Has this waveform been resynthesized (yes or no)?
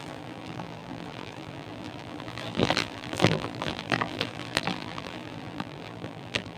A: yes